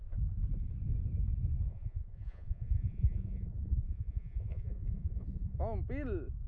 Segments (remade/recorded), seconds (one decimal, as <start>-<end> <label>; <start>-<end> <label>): 0.0-1.7 recorded; 1.7-5.6 remade; 5.6-6.5 recorded

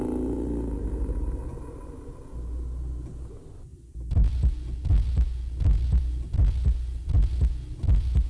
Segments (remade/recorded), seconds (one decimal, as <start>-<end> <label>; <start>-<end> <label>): 0.0-8.3 recorded

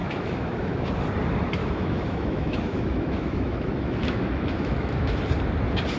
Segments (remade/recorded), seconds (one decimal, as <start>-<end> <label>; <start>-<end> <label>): 0.0-0.9 remade; 0.9-1.6 recorded; 1.6-5.2 remade; 5.2-6.0 recorded

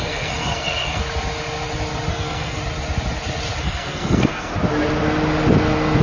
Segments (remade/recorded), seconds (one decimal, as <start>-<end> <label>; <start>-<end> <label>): 0.0-1.0 remade; 1.0-2.1 recorded; 2.1-2.6 remade; 2.6-3.6 recorded; 3.6-4.5 remade; 4.5-6.0 recorded

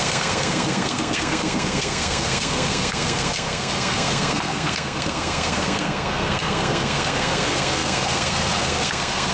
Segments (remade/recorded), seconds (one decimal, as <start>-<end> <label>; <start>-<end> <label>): 0.0-9.3 remade

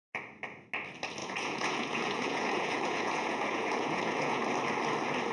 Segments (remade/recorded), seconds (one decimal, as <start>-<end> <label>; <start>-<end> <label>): 0.0-1.2 recorded; 1.2-4.4 remade; 4.4-5.3 recorded